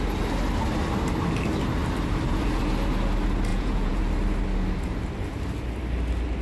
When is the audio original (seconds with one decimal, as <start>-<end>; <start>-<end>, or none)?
0.0-3.5; 4.0-6.4